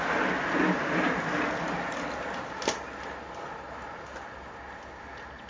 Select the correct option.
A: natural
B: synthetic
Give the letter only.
A